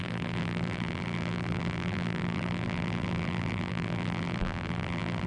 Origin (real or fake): fake